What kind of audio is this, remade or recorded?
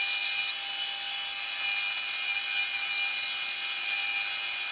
recorded